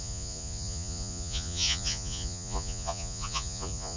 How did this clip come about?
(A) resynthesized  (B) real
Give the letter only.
A